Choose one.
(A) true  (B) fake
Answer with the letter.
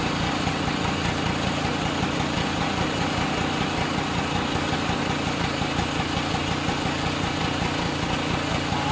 A